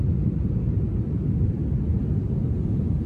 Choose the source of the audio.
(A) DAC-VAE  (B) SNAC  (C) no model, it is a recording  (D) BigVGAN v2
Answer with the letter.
C